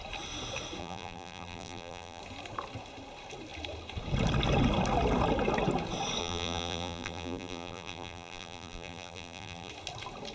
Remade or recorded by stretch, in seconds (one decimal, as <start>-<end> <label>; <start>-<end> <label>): 0.0-0.8 recorded; 0.8-2.2 remade; 2.2-6.2 recorded; 6.2-9.7 remade; 9.7-10.3 recorded